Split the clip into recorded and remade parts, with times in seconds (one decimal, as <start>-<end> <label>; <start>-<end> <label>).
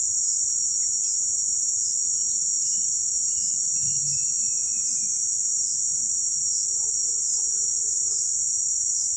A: 0.0-8.6 recorded; 8.6-9.2 remade